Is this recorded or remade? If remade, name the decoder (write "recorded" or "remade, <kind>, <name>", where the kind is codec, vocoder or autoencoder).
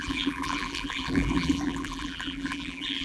remade, vocoder, BigVGAN v2